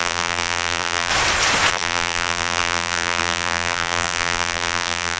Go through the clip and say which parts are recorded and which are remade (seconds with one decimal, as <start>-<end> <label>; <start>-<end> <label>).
0.0-1.1 remade; 1.1-1.7 recorded; 1.7-5.2 remade